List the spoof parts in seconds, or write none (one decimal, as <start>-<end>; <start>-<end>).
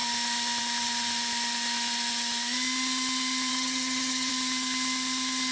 3.5-4.3